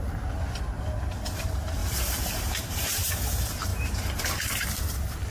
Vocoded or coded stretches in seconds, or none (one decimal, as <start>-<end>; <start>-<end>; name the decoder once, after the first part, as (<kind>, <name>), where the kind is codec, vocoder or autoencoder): 1.8-3.1 (vocoder, BigVGAN v2); 3.7-4.2